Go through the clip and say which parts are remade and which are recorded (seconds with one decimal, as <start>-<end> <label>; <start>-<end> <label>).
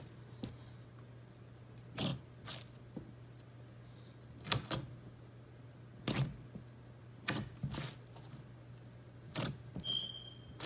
0.0-10.7 recorded